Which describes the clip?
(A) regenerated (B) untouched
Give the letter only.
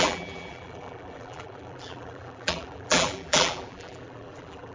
A